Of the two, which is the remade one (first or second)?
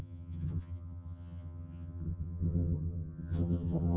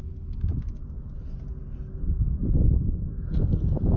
first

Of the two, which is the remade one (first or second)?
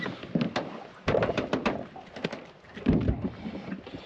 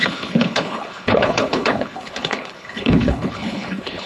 second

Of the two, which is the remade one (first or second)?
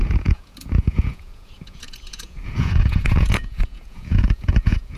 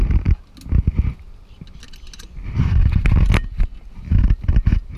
first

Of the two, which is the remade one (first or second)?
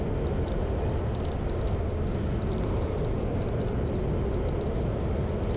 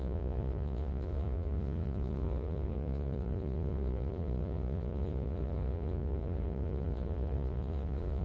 second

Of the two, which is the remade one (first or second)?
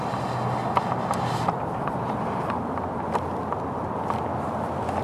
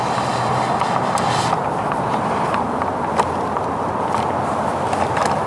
second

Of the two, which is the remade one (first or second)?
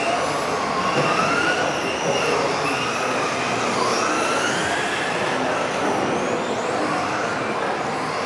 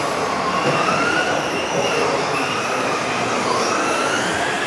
second